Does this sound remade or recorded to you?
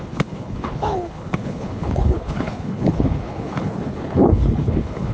remade